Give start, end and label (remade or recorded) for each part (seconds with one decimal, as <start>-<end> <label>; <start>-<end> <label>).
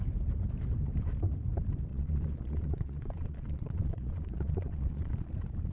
0.0-1.9 recorded; 1.9-5.3 remade; 5.3-5.7 recorded